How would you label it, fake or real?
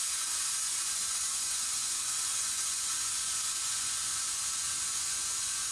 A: fake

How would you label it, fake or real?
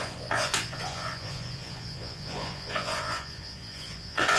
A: fake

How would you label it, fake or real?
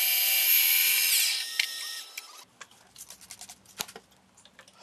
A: real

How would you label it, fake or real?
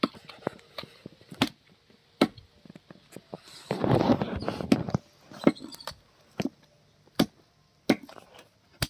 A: real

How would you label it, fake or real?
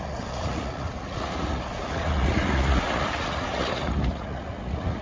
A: fake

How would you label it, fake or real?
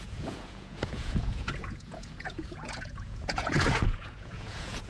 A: fake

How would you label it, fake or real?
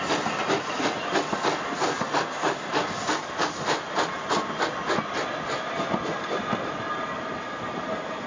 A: real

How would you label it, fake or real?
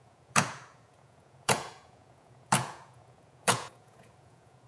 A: fake